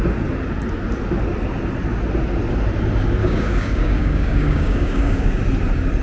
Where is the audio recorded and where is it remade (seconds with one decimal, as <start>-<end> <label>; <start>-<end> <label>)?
0.0-3.2 recorded; 3.2-5.4 remade; 5.4-6.0 recorded